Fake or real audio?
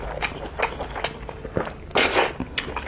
real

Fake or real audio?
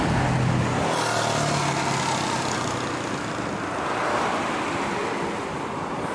real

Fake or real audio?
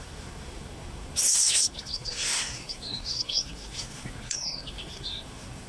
fake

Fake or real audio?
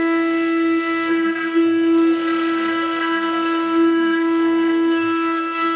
fake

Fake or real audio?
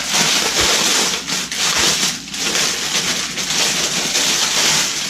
real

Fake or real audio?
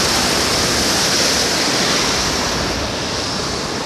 real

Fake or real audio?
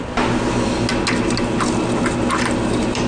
real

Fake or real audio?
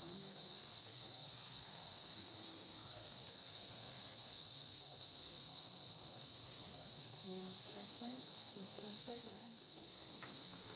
fake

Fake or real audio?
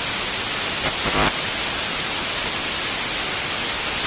real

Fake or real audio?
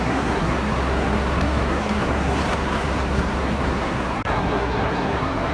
fake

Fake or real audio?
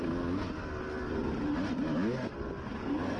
real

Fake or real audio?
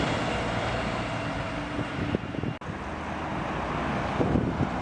real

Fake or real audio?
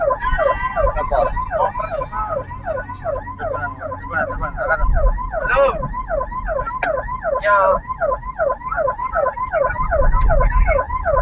real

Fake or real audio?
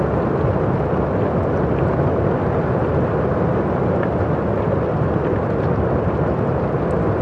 real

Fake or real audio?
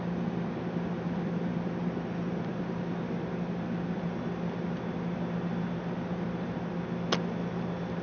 real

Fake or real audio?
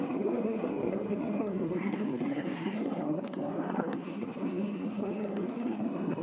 fake